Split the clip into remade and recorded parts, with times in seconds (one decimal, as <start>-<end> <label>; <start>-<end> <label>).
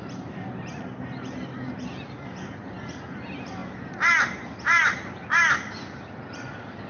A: 0.0-6.9 recorded